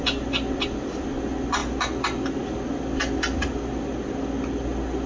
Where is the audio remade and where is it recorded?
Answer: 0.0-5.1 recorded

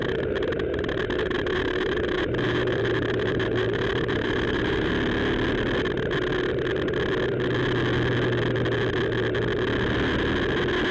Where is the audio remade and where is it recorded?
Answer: 0.0-4.9 remade; 4.9-10.9 recorded